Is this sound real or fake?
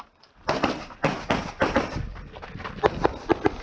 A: real